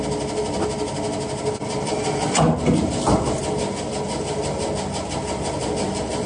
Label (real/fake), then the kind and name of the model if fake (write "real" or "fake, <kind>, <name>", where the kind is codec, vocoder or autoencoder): real